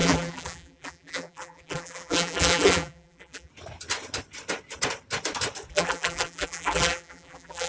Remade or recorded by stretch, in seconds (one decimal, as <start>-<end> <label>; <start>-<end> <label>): 0.0-3.5 remade; 3.5-5.7 recorded; 5.7-7.7 remade